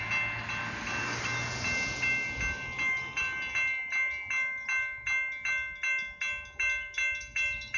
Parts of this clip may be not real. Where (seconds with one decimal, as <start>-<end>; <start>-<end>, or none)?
none